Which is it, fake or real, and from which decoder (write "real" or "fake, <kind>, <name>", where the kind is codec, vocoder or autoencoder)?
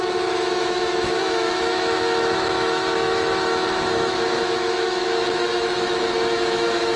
fake, autoencoder, DAC-VAE